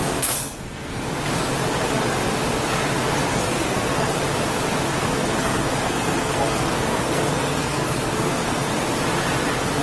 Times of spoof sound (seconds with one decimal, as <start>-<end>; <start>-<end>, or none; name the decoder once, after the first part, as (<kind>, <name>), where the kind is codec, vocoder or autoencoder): 0.0-1.0 (codec, SNAC); 3.3-4.1; 4.9-8.7